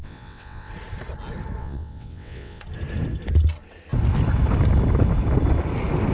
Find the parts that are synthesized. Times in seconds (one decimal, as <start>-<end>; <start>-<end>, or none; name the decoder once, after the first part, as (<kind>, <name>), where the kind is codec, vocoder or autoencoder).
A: 0.0-0.7 (vocoder, WaveNeXt); 1.6-2.6